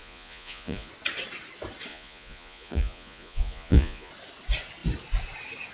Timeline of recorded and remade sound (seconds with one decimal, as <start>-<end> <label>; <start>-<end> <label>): 0.0-0.9 remade; 0.9-1.9 recorded; 1.9-4.1 remade; 4.1-5.7 recorded